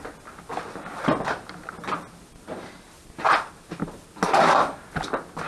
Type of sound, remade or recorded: recorded